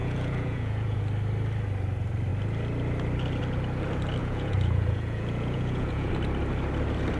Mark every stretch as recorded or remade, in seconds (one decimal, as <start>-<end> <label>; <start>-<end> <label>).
0.0-1.0 remade; 1.0-4.2 recorded; 4.2-6.1 remade; 6.1-7.2 recorded